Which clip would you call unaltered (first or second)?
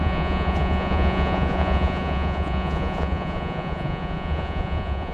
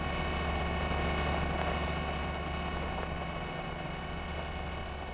second